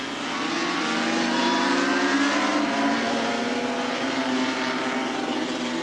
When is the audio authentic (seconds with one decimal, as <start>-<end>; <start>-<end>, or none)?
0.0-2.5; 3.3-5.8